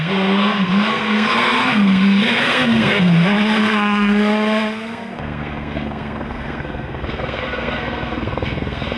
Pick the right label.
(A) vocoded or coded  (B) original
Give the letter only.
A